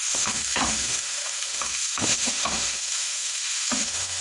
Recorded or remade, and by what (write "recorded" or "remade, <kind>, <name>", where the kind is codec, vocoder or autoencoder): remade, autoencoder, DAC-VAE